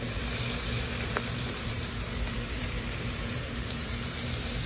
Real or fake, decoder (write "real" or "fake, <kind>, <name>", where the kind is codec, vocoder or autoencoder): fake, vocoder, BigVGAN v2